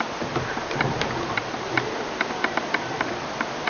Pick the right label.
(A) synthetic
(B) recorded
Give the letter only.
B